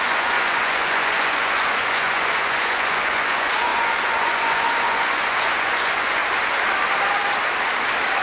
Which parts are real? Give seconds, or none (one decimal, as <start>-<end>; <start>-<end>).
6.2-8.2